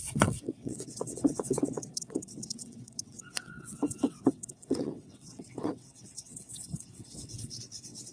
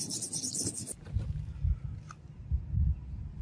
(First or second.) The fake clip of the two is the first